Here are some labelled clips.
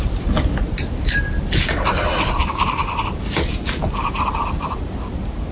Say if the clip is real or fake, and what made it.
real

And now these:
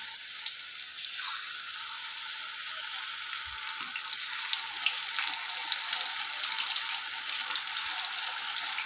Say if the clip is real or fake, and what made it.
real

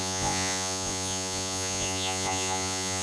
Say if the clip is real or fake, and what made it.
fake, vocoder, Vocos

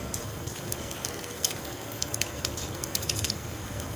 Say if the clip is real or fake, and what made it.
fake, codec, SNAC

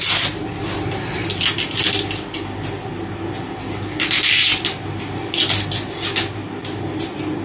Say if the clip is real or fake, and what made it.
real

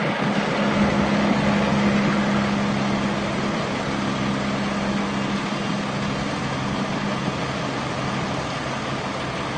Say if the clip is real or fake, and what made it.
real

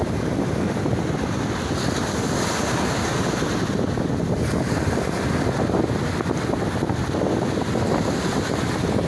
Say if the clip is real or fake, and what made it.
real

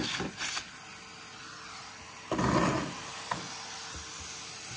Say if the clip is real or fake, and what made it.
real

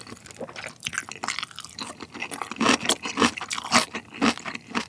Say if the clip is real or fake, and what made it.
real